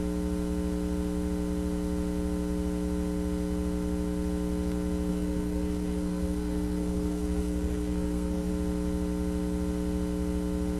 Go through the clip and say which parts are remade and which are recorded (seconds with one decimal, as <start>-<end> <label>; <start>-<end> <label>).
0.0-5.1 recorded; 5.1-8.5 remade; 8.5-10.8 recorded